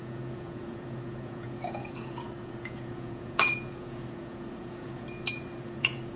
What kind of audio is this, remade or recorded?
remade